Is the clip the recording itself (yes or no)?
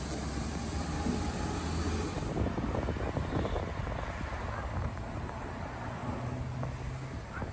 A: yes